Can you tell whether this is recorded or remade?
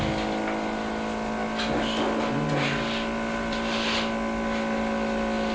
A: recorded